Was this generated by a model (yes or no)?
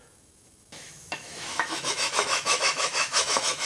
yes